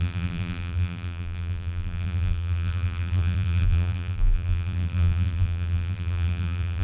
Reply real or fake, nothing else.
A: fake